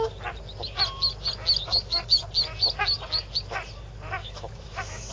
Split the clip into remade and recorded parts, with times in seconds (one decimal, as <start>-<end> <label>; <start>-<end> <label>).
0.0-1.7 recorded; 1.7-2.2 remade; 2.2-4.2 recorded; 4.2-5.1 remade